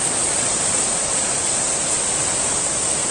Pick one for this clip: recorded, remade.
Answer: recorded